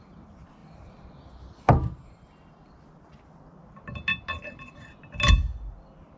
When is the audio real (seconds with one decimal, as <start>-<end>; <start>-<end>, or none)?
0.0-6.2